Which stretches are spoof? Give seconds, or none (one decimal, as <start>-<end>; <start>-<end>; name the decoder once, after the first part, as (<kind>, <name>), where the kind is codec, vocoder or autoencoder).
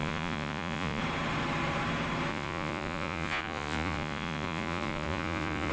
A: 0.0-1.0 (vocoder, Vocos); 2.3-5.7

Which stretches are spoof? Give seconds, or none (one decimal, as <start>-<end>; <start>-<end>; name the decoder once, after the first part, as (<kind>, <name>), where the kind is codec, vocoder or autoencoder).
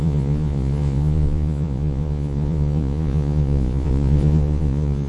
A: 0.0-5.1 (vocoder, Vocos)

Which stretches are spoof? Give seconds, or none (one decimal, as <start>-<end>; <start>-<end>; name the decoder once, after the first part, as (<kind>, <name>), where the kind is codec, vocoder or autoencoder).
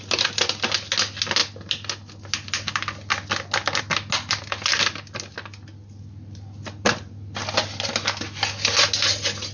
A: none